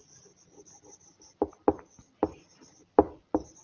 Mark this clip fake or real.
real